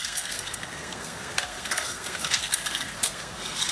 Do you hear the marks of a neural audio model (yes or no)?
yes